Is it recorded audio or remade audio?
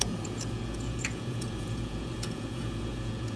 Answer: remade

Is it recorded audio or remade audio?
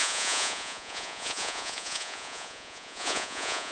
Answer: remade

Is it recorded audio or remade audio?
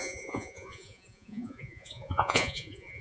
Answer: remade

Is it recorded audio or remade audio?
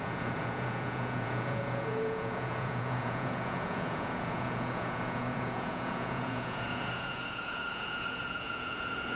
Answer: remade